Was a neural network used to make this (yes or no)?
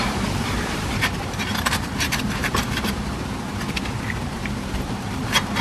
yes